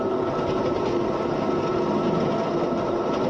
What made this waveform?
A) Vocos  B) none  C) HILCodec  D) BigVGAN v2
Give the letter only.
B